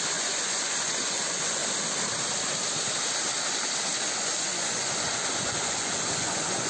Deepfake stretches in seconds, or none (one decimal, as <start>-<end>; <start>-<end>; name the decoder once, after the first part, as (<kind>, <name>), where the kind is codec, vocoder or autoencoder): 0.0-1.6 (vocoder, Vocos); 4.1-6.7